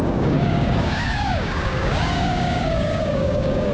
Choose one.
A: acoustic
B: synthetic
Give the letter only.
B